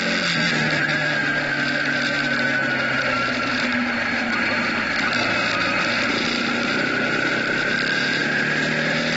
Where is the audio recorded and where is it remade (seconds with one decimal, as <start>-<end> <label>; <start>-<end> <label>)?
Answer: 0.0-9.2 recorded